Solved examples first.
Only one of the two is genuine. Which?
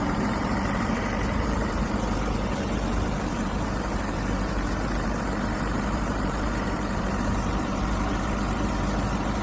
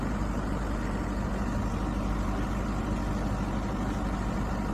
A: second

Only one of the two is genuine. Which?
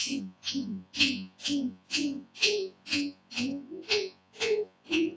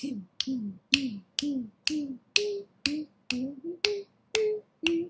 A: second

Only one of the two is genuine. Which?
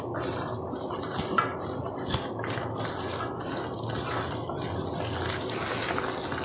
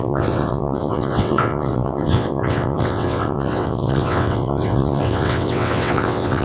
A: first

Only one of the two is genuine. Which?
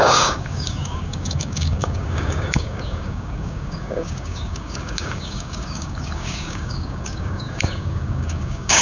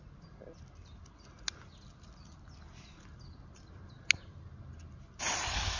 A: second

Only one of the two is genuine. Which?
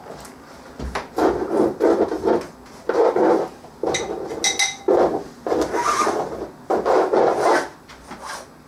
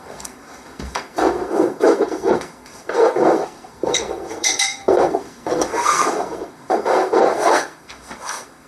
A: first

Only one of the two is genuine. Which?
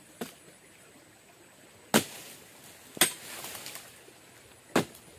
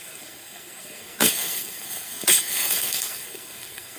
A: first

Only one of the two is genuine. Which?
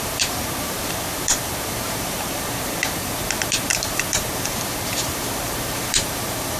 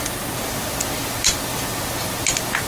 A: second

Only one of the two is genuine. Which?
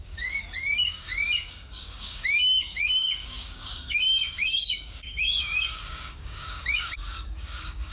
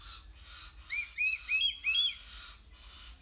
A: second